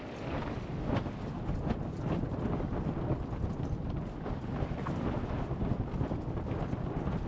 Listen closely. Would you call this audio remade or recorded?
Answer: recorded